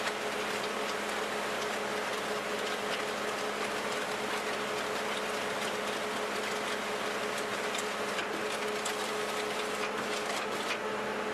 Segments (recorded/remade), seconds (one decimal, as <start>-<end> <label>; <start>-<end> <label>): 0.0-11.3 recorded